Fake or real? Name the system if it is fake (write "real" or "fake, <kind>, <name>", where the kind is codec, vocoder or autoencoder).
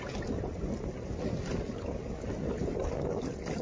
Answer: real